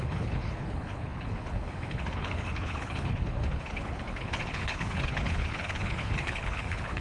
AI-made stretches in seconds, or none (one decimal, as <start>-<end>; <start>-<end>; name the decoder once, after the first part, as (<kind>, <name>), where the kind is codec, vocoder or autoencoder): 0.0-7.0 (codec, HILCodec)